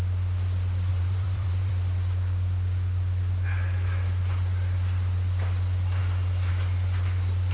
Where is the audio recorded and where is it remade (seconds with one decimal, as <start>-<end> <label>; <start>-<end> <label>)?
0.0-0.9 recorded; 0.9-1.7 remade; 1.7-7.5 recorded